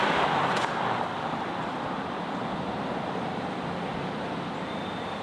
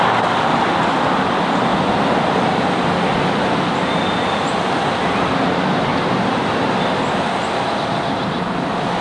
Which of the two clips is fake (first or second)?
first